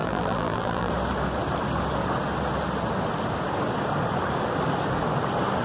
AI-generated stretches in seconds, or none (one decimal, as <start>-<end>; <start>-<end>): 0.0-0.9